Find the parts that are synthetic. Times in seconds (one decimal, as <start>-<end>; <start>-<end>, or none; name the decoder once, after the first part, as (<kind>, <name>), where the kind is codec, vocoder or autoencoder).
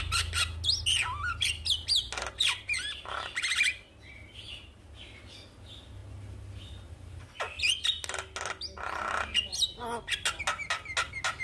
none